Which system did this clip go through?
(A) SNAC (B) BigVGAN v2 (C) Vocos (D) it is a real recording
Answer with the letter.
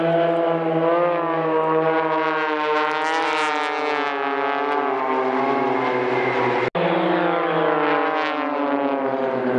D